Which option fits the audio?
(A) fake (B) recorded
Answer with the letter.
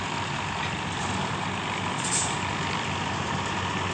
B